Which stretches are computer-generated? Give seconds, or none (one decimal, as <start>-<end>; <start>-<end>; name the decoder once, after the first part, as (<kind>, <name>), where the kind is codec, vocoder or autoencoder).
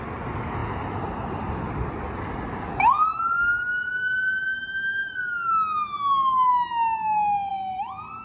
none